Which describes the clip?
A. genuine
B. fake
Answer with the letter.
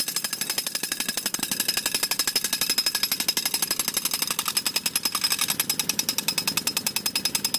A